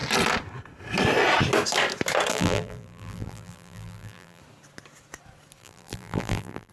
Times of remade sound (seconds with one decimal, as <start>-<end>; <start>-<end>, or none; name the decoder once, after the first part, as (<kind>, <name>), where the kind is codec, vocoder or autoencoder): 2.3-4.4 (vocoder, BigVGAN v2); 5.6-6.7